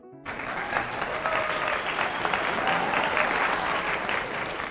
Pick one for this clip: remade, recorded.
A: remade